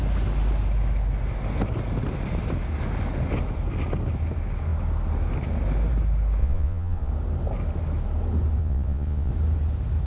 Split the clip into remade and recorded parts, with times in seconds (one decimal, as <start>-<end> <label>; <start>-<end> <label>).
0.0-6.4 recorded; 6.4-7.1 remade; 7.1-8.6 recorded; 8.6-9.3 remade; 9.3-10.1 recorded